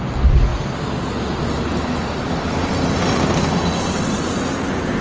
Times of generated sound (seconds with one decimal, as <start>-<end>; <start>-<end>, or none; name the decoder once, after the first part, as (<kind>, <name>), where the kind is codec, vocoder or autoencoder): none